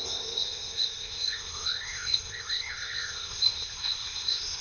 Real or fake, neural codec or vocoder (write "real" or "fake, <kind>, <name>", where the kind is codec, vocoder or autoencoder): fake, codec, ZipCodec